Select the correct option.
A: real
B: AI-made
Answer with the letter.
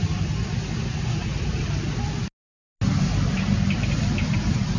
A